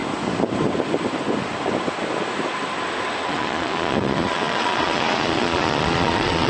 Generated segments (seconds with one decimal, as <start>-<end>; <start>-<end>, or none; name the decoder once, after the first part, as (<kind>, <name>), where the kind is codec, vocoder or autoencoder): 3.2-6.5 (vocoder, Vocos)